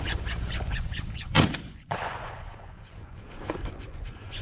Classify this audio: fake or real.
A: fake